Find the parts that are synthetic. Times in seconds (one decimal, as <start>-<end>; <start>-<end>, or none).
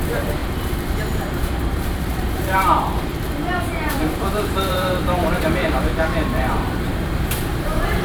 0.0-0.4; 1.3-3.1; 3.9-8.0